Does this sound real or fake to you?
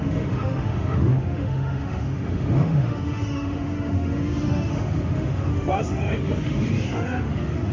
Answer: fake